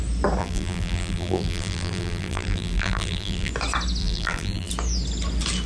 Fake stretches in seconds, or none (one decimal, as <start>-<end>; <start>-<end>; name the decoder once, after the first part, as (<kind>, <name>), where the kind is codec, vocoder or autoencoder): 0.4-3.5 (vocoder, BigVGAN v2); 4.0-4.7